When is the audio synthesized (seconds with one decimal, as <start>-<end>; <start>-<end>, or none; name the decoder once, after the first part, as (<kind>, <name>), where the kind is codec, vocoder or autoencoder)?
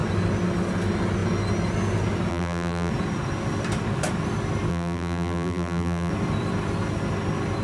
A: 2.3-2.9 (vocoder, BigVGAN v2); 4.7-6.1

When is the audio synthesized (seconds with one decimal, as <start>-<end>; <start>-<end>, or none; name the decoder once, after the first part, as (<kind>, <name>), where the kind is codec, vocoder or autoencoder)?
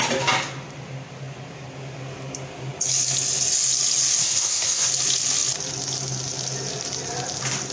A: 4.2-4.9 (codec, SNAC)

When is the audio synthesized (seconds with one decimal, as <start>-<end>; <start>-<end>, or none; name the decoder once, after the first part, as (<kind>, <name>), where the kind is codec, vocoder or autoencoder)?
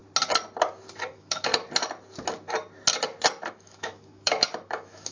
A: 1.1-1.5 (autoencoder, DAC-VAE); 3.5-5.1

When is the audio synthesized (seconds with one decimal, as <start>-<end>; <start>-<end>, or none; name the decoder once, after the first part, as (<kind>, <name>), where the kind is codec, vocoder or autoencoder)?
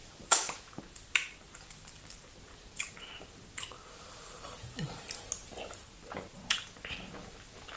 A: 0.0-0.8 (autoencoder, DAC-VAE); 7.2-7.8